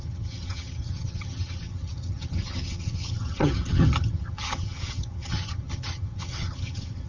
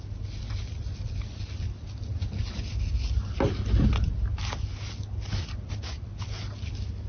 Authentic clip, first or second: second